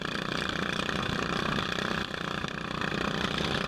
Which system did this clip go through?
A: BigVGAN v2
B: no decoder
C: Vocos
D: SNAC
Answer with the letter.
B